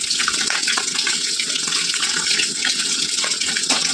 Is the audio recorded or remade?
remade